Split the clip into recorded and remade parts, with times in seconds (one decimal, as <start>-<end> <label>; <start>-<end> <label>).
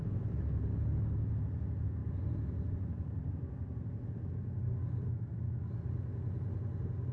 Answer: 0.0-2.0 recorded; 2.0-4.3 remade; 4.3-7.1 recorded